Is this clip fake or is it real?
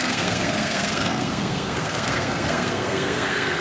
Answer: fake